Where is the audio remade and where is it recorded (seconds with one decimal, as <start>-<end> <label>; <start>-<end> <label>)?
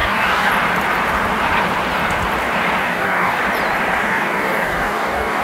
0.0-0.5 remade; 0.5-2.8 recorded; 2.8-3.4 remade; 3.4-4.0 recorded; 4.0-5.4 remade